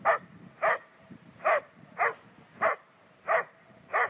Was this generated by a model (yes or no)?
yes